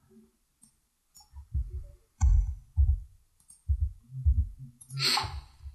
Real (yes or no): yes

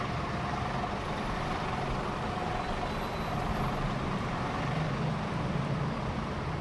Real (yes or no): yes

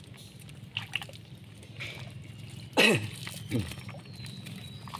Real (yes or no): yes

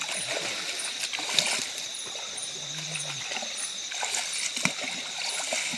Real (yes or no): yes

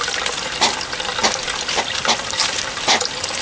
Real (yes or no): yes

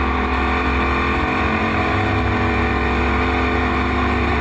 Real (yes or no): yes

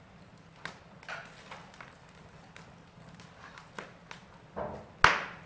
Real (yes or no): yes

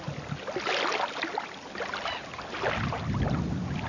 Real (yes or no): yes